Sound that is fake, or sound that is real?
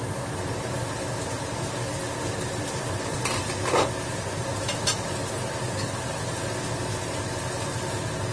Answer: real